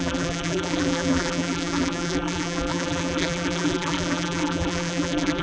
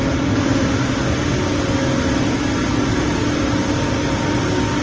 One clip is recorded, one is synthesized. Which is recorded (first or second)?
second